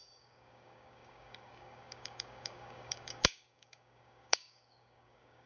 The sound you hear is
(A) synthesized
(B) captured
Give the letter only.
A